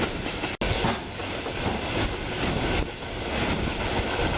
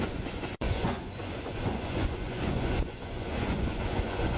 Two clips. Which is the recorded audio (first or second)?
first